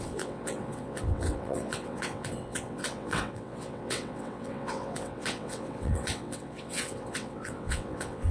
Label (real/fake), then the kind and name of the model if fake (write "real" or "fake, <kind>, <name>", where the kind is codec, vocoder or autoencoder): fake, vocoder, WaveNeXt